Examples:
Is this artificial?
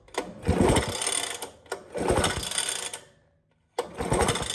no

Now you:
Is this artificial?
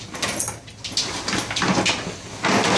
no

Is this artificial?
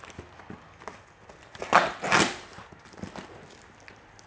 no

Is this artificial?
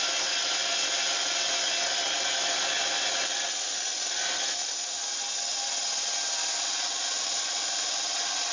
no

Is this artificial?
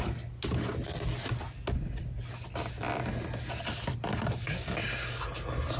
no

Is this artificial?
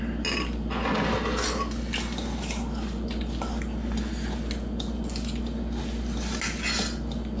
no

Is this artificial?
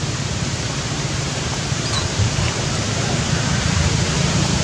yes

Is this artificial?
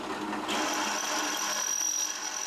no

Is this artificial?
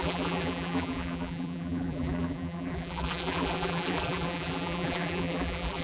yes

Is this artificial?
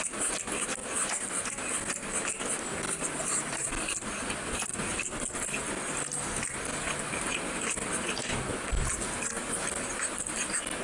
no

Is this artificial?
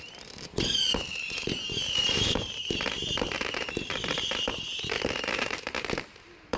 yes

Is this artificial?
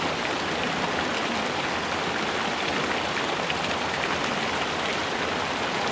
no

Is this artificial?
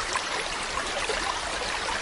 yes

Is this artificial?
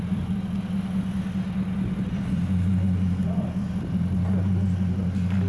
no